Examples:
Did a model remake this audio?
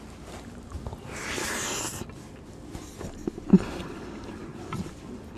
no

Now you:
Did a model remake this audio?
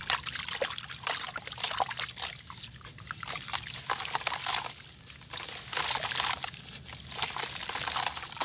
no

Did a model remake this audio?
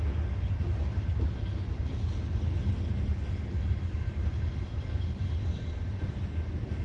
no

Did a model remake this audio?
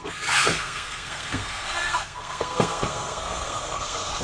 yes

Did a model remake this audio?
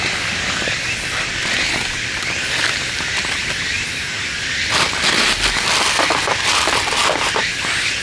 no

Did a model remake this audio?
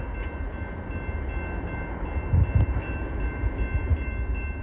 no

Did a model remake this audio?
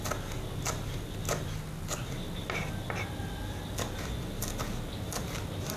no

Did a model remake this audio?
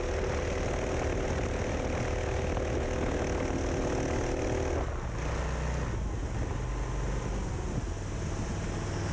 no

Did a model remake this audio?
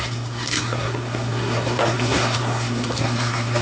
yes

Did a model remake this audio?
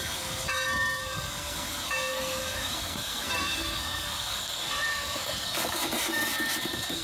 yes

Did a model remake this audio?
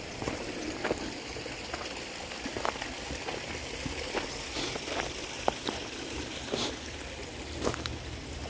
no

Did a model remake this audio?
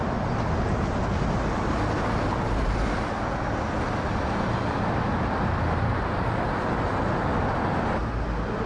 no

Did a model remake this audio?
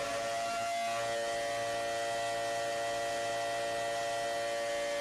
no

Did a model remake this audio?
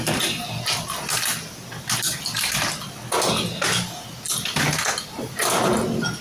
no